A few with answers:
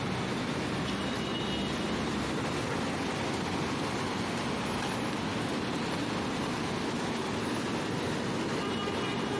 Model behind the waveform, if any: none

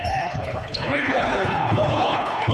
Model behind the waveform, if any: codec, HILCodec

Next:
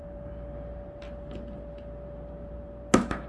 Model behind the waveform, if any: none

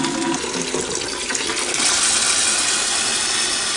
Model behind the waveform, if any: none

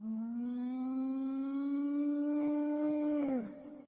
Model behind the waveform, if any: codec, HILCodec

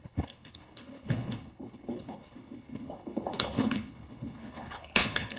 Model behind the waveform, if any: codec, HILCodec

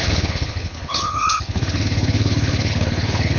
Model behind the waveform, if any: codec, HILCodec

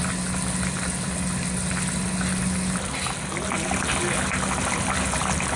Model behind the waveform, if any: none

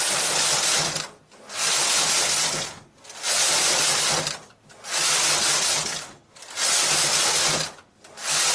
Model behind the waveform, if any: none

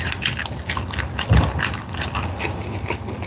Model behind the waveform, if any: none